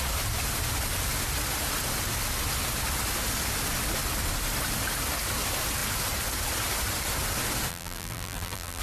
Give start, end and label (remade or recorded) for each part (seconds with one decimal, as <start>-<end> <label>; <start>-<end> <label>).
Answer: 0.0-7.7 recorded; 7.7-8.8 remade